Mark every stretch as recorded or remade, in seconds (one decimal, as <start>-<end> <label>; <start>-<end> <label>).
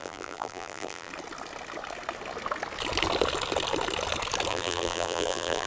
0.0-1.1 remade; 1.1-4.5 recorded; 4.5-5.7 remade